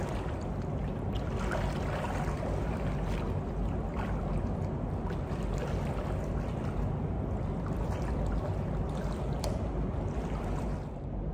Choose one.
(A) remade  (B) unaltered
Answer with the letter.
B